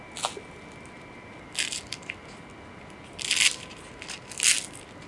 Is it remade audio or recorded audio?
recorded